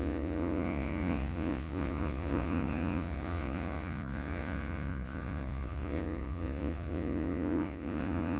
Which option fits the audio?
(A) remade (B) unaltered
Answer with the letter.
A